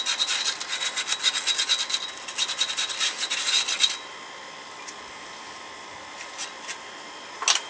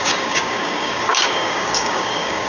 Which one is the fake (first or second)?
second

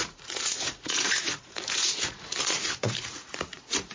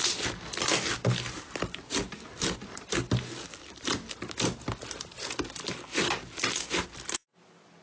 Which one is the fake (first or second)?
first